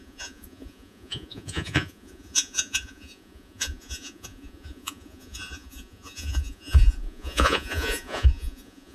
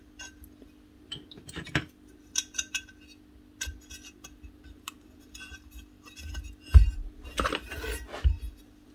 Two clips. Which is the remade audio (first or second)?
first